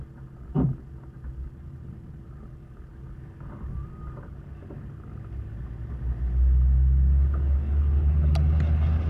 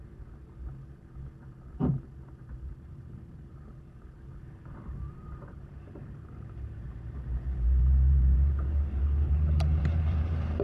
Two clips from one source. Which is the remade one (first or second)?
second